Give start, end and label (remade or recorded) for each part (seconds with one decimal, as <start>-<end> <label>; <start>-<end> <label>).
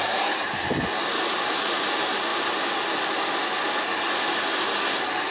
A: 0.0-5.3 recorded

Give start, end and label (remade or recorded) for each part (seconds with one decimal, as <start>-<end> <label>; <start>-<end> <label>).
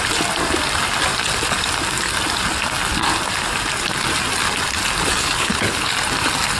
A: 0.0-5.2 recorded; 5.2-5.9 remade; 5.9-6.6 recorded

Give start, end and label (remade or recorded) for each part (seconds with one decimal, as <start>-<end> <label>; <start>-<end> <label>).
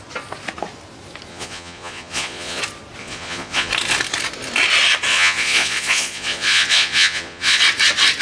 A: 0.0-1.3 recorded; 1.3-2.6 remade; 2.6-3.0 recorded; 3.0-3.7 remade; 3.7-5.1 recorded; 5.1-7.6 remade; 7.6-8.2 recorded